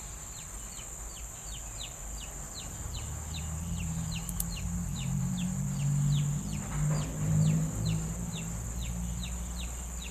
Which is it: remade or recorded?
recorded